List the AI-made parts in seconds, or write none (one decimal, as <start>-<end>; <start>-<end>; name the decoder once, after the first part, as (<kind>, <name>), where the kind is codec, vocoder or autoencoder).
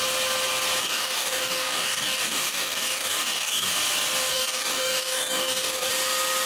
0.8-3.7 (codec, DAC); 4.3-5.9